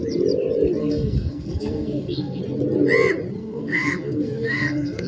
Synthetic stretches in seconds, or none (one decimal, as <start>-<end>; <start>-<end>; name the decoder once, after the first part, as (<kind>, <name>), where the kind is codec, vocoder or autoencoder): 0.8-2.4 (codec, SNAC); 3.4-5.1